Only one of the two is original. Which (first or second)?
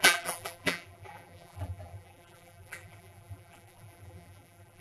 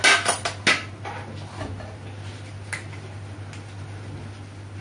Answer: second